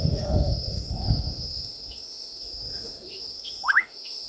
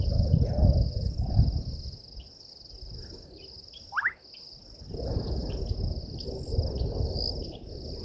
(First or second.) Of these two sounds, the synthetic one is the first